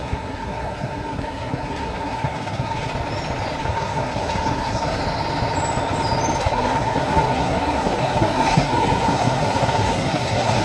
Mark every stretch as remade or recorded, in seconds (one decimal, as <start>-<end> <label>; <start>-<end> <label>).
0.0-2.9 remade; 2.9-3.6 recorded; 3.6-5.0 remade; 5.0-6.4 recorded; 6.4-10.6 remade